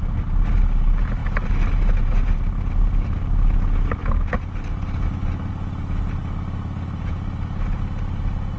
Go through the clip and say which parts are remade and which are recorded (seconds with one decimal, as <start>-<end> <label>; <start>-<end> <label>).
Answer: 0.0-8.6 recorded